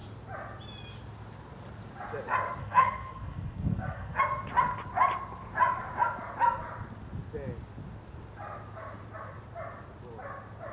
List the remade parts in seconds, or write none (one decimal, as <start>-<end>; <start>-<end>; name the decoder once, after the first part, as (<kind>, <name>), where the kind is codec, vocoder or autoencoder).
2.6-4.2 (codec, SNAC)